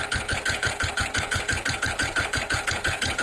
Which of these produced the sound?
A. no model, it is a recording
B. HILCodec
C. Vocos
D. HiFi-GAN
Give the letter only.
B